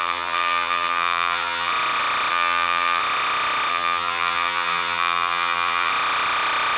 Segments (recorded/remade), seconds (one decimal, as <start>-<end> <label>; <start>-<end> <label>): 0.0-1.7 remade; 1.7-2.3 recorded; 2.3-3.0 remade; 3.0-3.7 recorded; 3.7-5.9 remade; 5.9-6.8 recorded